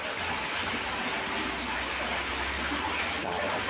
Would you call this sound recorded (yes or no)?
yes